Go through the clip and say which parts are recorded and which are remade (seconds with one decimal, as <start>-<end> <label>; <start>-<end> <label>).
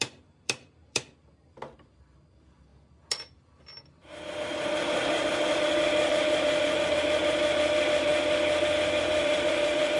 0.0-2.7 remade; 2.7-6.1 recorded; 6.1-8.1 remade; 8.1-9.0 recorded; 9.0-10.0 remade